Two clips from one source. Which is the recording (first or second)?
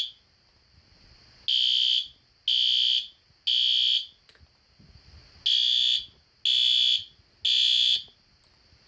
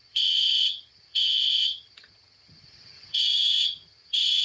first